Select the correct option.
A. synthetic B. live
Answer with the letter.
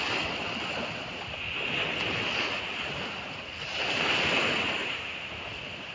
B